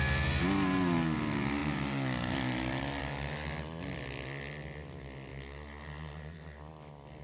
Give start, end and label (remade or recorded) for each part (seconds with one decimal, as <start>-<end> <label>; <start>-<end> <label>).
0.0-7.2 recorded